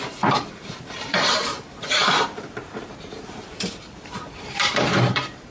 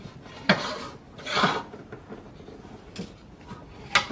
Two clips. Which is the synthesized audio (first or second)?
first